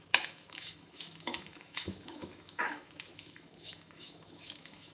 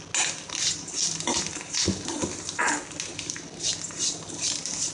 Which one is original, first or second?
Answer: second